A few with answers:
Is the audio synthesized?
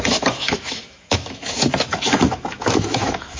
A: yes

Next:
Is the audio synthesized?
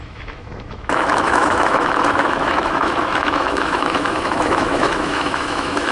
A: yes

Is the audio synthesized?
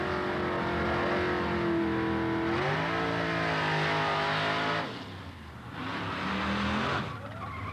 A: no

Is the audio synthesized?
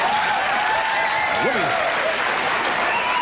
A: no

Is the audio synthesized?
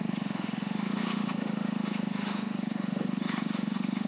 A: yes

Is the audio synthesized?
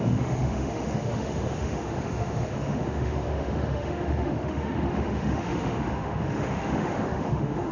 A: yes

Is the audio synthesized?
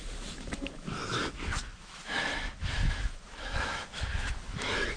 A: yes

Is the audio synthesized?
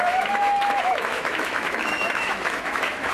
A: yes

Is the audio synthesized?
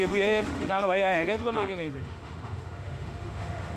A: yes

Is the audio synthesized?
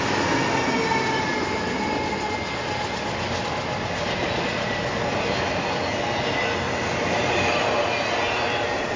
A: no